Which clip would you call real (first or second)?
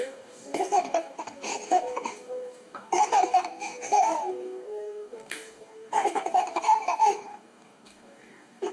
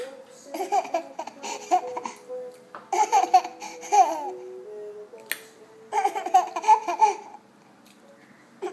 second